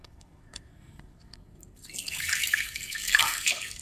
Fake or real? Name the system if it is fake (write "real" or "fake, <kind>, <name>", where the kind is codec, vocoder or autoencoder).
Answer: fake, codec, SNAC